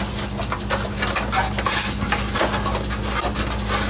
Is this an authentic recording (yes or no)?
yes